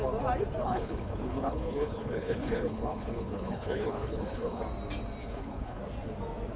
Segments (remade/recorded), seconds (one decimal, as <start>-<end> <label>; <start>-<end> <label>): 0.0-0.6 recorded; 0.6-4.6 remade; 4.6-5.2 recorded; 5.2-5.8 remade; 5.8-6.6 recorded

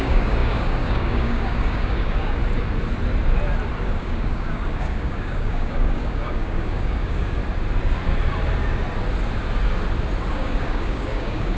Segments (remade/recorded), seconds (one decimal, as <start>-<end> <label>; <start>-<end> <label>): 0.0-2.4 remade; 2.4-3.8 recorded; 3.8-7.4 remade; 7.4-10.3 recorded; 10.3-11.6 remade

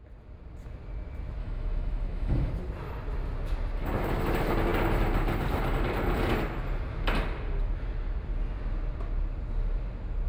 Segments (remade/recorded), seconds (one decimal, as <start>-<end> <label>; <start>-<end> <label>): 0.0-1.4 recorded; 1.4-2.5 remade; 2.5-10.3 recorded

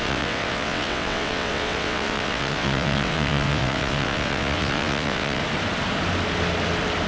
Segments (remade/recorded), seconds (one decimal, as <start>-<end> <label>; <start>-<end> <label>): 0.0-5.4 remade; 5.4-7.1 recorded